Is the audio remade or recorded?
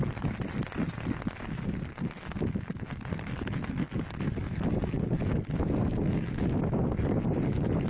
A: recorded